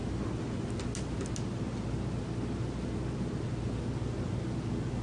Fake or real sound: real